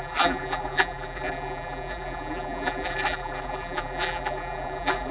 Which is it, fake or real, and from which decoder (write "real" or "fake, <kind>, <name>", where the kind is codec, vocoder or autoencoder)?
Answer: fake, vocoder, BigVGAN v2